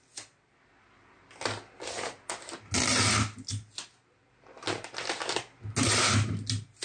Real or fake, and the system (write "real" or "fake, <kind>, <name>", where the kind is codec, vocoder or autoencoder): real